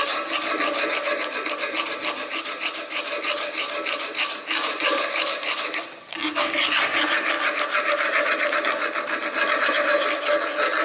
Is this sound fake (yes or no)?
no